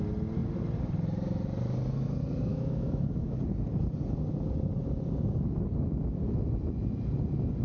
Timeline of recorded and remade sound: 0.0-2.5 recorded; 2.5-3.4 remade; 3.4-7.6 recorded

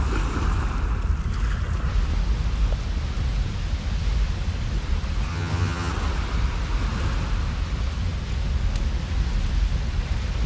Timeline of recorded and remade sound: 0.0-5.3 recorded; 5.3-5.9 remade; 5.9-10.5 recorded

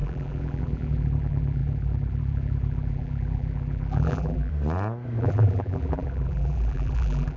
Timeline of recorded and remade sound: 0.0-4.5 remade; 4.5-5.2 recorded; 5.2-7.4 remade

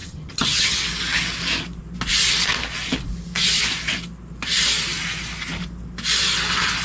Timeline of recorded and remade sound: 0.0-0.8 remade; 0.8-6.8 recorded

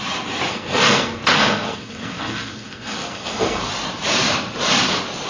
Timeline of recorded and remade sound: 0.0-0.5 recorded; 0.5-3.7 remade; 3.7-5.3 recorded

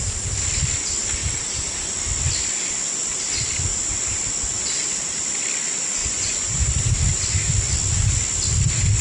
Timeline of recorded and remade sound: 0.0-6.0 recorded; 6.0-6.7 remade; 6.7-9.0 recorded